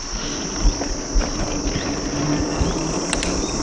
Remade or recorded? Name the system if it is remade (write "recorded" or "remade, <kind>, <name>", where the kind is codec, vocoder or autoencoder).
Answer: recorded